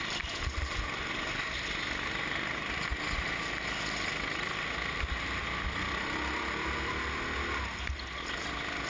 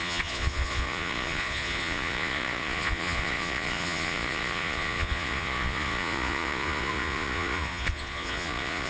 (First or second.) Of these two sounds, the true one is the first